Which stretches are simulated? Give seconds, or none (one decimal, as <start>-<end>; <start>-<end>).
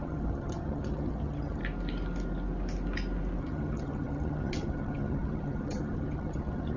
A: 0.0-1.6; 3.4-6.8